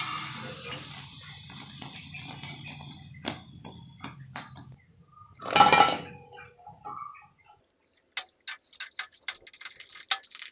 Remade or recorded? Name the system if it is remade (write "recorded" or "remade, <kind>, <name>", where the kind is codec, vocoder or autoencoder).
recorded